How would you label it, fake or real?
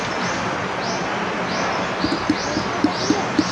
real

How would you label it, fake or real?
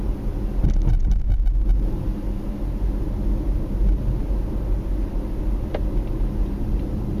real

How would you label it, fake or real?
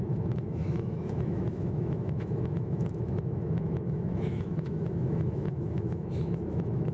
fake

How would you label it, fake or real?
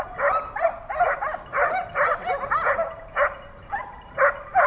real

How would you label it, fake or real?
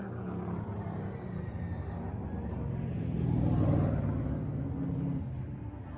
real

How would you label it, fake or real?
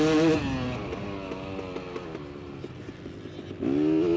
real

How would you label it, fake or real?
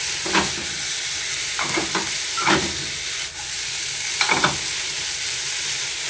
real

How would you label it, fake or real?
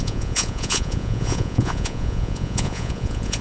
fake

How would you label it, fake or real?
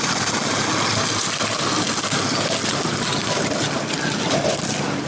real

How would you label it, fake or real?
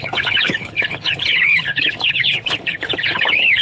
fake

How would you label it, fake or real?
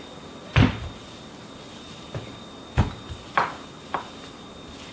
real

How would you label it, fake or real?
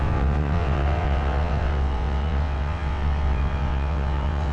fake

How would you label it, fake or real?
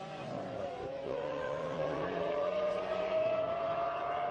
fake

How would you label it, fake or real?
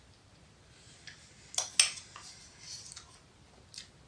real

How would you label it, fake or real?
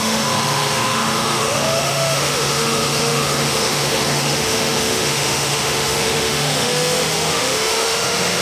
fake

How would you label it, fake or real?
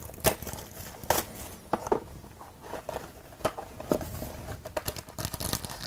real